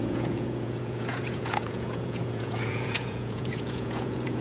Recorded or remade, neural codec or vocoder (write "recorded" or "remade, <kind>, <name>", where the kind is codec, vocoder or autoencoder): remade, vocoder, Vocos